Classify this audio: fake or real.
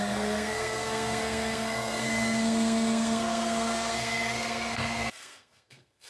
fake